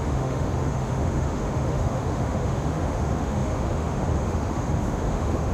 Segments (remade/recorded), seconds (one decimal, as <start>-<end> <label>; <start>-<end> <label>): 0.0-5.5 remade